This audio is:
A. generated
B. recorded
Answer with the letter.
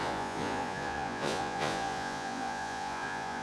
A